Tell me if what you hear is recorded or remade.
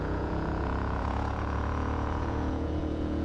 remade